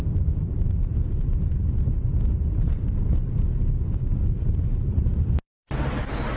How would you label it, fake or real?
fake